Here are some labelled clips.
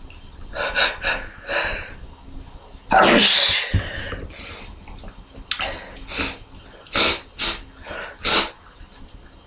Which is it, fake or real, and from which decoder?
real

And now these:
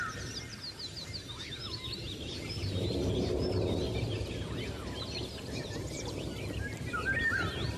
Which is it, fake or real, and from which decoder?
real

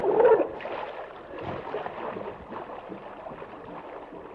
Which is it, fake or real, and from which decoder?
fake, vocoder, BigVGAN v2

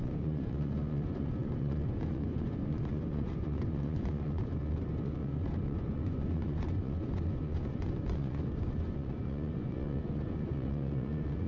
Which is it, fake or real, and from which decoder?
fake, vocoder, Vocos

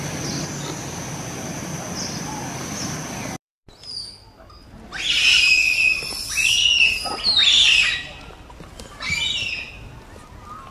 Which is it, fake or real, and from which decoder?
real